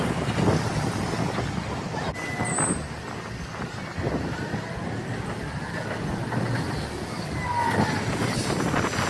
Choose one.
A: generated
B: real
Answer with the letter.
B